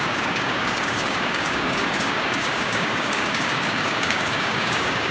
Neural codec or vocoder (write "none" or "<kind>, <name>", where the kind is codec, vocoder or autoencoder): codec, DAC